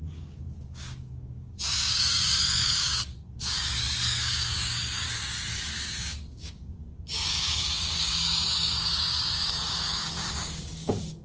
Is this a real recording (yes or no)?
no